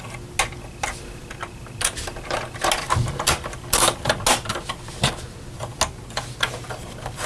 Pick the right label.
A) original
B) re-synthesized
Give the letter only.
A